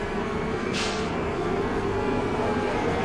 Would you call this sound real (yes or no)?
no